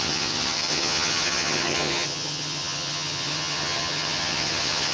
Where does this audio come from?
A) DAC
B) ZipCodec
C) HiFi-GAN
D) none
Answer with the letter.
C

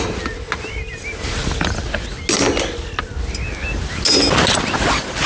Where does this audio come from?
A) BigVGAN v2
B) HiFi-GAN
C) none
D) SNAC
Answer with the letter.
C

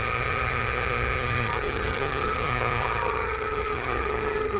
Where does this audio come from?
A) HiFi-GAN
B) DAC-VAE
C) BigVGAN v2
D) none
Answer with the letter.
A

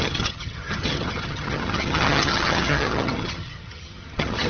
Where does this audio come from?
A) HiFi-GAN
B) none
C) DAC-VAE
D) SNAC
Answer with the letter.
A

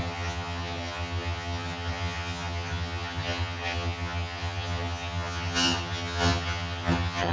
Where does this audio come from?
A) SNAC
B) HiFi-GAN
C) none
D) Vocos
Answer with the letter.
B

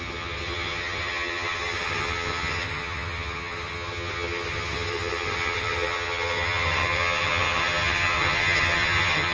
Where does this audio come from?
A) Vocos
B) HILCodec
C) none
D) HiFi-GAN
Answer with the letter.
D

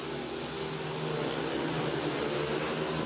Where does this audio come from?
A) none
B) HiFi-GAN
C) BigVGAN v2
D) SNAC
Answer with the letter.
A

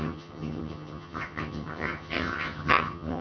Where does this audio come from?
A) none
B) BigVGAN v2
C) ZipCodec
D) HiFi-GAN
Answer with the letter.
D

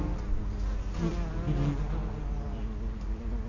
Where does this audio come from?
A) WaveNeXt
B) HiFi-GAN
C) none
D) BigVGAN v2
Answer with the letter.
C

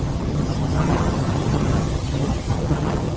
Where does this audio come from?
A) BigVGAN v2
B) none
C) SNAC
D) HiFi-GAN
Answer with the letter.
D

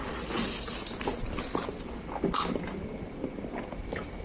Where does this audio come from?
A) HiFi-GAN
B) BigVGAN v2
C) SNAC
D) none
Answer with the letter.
D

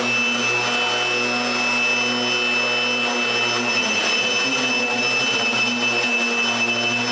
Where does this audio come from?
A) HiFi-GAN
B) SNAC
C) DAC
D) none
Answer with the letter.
D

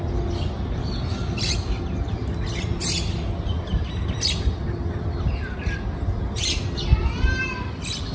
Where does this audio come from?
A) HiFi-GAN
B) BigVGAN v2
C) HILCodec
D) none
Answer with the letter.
D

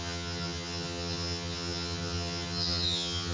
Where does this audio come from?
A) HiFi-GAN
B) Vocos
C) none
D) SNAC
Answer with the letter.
A